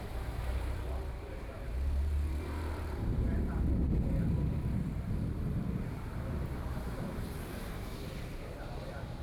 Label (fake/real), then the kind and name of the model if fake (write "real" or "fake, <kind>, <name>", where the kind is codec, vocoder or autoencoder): fake, vocoder, BigVGAN v2